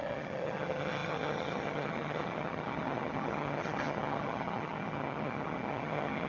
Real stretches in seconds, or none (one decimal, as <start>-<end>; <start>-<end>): none